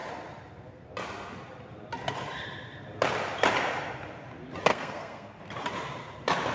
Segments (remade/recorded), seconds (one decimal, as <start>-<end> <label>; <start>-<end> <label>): 0.0-4.7 recorded; 4.7-5.4 remade; 5.4-6.5 recorded

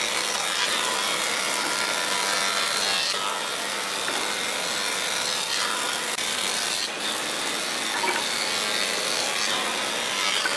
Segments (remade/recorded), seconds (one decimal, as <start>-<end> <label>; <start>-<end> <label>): 0.0-10.6 recorded

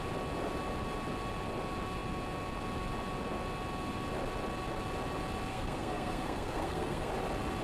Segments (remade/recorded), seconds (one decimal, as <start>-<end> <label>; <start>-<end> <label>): 0.0-5.5 recorded; 5.5-7.1 remade; 7.1-7.6 recorded

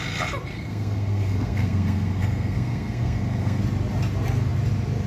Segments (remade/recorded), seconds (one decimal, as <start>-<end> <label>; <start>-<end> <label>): 0.0-0.5 recorded; 0.5-3.6 remade; 3.6-5.1 recorded

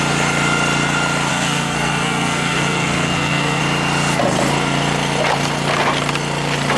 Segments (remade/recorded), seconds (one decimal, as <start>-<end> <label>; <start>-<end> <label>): 0.0-1.3 recorded; 1.3-3.6 remade; 3.6-6.8 recorded